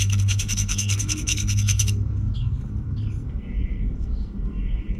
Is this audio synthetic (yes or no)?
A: yes